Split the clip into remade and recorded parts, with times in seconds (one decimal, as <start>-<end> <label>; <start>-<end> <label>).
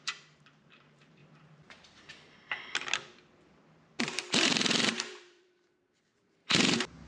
0.0-1.2 remade; 1.2-4.0 recorded; 4.0-7.1 remade